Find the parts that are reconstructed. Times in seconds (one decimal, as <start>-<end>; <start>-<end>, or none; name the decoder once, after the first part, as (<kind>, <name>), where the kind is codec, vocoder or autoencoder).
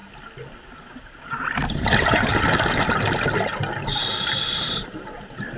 0.6-2.3 (vocoder, BigVGAN v2); 4.5-5.6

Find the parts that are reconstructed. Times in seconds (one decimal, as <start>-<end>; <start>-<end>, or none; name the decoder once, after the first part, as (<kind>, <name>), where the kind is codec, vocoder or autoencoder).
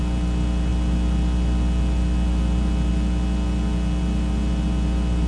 none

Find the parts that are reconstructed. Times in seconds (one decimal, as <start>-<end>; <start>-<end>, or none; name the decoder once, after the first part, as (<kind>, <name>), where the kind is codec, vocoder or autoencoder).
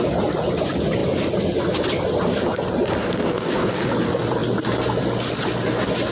3.0-3.8 (codec, DAC)